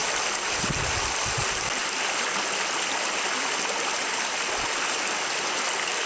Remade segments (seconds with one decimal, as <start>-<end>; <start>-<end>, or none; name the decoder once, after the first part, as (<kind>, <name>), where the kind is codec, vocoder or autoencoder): none